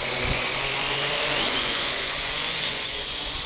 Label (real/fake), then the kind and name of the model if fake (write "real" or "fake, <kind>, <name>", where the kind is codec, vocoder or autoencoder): fake, vocoder, Vocos